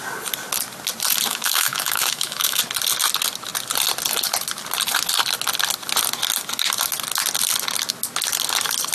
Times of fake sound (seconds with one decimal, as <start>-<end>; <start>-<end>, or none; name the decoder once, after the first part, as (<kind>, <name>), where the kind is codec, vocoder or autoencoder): 1.3-2.6 (autoencoder, DAC-VAE)